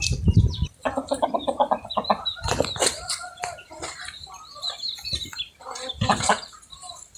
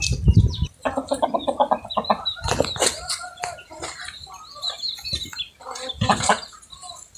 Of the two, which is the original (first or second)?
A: second